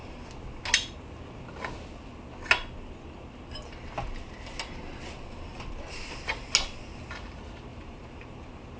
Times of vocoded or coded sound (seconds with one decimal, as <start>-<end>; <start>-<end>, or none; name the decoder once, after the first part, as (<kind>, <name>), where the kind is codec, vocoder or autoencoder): 7.7-8.8 (vocoder, BigVGAN v2)